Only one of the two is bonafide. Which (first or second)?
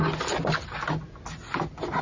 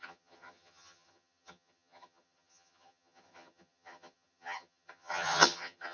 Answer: first